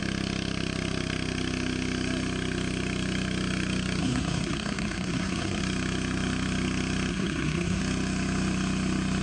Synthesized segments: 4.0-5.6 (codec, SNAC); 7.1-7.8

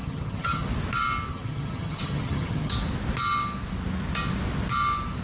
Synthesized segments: 0.0-0.7 (vocoder, HiFi-GAN); 1.3-2.7

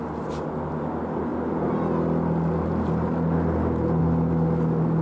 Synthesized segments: none

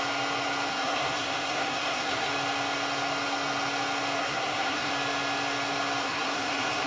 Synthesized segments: 0.7-2.3 (codec, SNAC); 4.2-4.9; 6.0-6.9

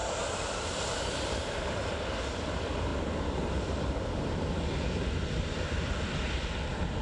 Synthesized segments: 0.0-2.9 (vocoder, BigVGAN v2); 5.3-7.0

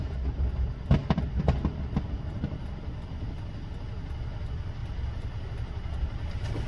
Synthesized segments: none

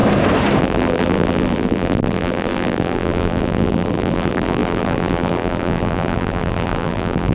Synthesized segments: 0.6-7.3 (vocoder, BigVGAN v2)